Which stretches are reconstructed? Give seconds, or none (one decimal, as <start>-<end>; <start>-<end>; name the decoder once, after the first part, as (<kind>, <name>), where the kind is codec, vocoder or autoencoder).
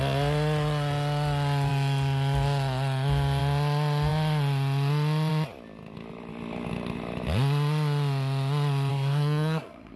8.9-10.0 (codec, SNAC)